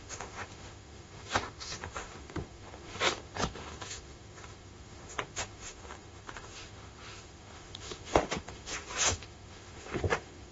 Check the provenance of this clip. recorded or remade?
remade